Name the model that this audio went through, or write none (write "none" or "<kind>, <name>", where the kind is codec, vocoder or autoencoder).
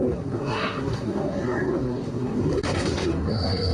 codec, SNAC